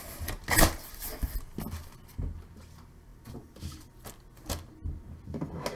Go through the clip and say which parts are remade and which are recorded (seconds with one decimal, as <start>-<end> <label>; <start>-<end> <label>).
0.0-3.1 recorded; 3.1-4.1 remade; 4.1-5.8 recorded